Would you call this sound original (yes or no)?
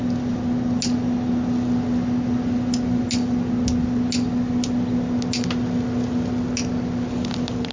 yes